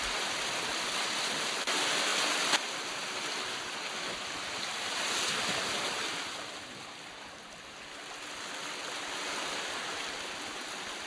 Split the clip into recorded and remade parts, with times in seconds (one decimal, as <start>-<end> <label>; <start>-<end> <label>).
0.0-11.1 recorded